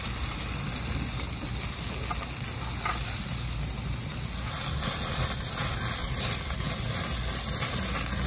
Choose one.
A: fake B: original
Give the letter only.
B